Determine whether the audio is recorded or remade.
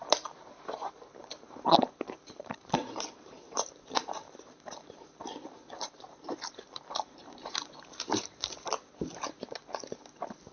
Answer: remade